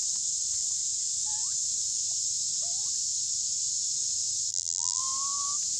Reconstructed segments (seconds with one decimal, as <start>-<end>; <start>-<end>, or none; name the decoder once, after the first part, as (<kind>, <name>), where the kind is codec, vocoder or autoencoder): 4.5-5.0 (vocoder, BigVGAN v2)